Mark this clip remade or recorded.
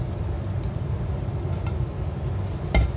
recorded